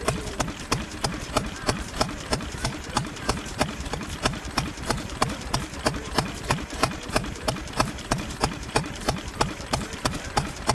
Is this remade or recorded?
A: remade